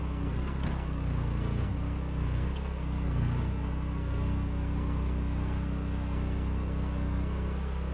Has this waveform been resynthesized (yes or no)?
yes